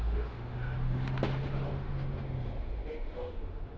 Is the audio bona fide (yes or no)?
no